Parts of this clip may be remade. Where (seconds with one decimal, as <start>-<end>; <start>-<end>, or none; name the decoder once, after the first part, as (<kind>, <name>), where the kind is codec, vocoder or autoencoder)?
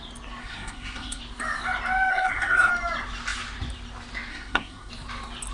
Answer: 0.4-1.2 (codec, SNAC); 2.1-2.7; 4.3-4.9